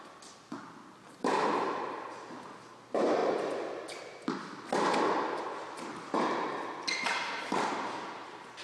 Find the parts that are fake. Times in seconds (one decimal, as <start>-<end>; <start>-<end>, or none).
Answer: none